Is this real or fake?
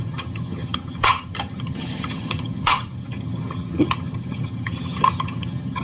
fake